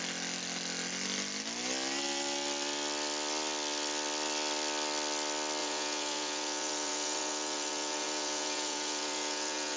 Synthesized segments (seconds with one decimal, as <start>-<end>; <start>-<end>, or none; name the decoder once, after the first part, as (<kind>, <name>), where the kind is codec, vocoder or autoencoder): 5.6-9.8 (vocoder, Vocos)